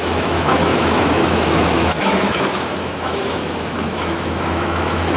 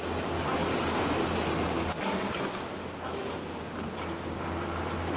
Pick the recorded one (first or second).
second